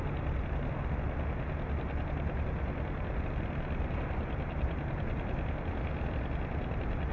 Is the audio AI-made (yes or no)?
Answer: no